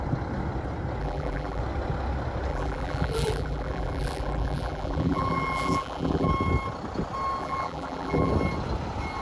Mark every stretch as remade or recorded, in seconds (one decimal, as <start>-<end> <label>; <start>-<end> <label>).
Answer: 0.0-1.0 recorded; 1.0-1.6 remade; 1.6-2.5 recorded; 2.5-6.3 remade; 6.3-7.4 recorded; 7.4-8.3 remade; 8.3-9.2 recorded

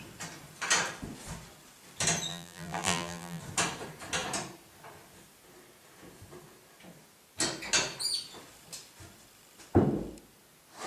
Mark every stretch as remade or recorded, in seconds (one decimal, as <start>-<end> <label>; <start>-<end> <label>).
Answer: 0.0-2.3 recorded; 2.3-3.4 remade; 3.4-10.9 recorded

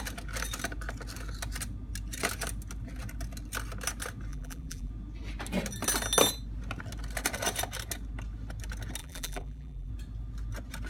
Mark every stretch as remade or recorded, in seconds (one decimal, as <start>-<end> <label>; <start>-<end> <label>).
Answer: 0.0-4.3 recorded; 4.3-4.9 remade; 4.9-9.0 recorded; 9.0-9.9 remade; 9.9-10.9 recorded